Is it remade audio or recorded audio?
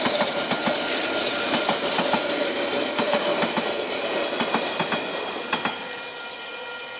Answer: recorded